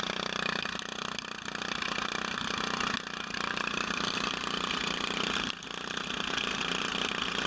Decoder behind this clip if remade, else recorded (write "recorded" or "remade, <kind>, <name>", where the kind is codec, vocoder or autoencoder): recorded